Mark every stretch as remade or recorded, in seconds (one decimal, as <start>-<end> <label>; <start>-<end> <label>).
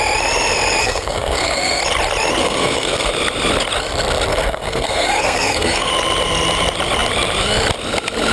0.0-0.8 recorded; 0.8-1.8 remade; 1.8-2.4 recorded; 2.4-3.1 remade; 3.1-4.3 recorded; 4.3-5.9 remade; 5.9-8.3 recorded